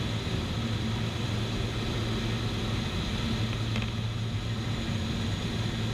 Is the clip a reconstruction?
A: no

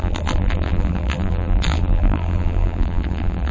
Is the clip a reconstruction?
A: yes